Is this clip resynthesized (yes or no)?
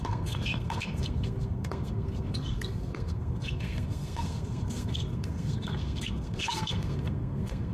yes